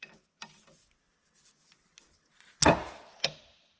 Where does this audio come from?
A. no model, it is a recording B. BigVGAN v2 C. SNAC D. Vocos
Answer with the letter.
A